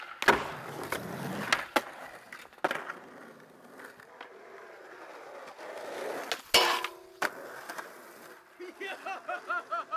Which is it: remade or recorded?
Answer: recorded